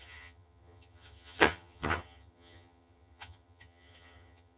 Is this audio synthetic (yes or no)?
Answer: yes